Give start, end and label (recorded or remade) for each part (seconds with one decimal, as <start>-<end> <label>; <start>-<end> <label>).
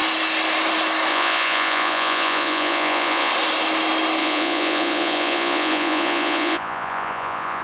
0.0-1.1 recorded; 1.1-3.3 remade; 3.3-4.2 recorded; 4.2-7.6 remade